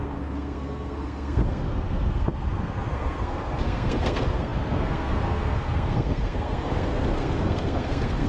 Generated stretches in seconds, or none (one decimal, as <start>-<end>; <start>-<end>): 0.0-8.3